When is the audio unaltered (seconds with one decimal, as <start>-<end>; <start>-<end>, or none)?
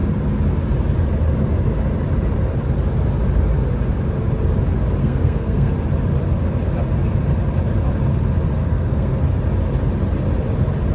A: 0.0-5.0; 5.7-8.6; 9.2-10.9